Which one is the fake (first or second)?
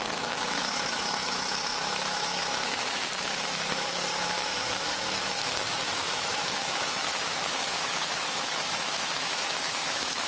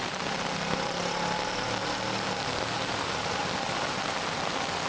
first